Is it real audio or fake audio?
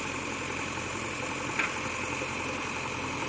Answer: real